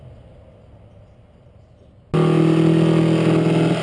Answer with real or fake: real